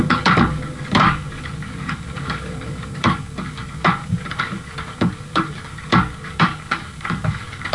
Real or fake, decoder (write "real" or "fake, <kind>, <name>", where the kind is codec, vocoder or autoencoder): fake, codec, DAC